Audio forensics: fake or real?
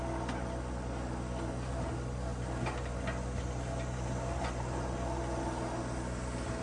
real